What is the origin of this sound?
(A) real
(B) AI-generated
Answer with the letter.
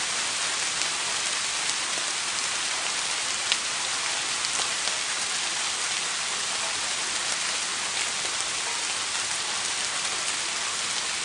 A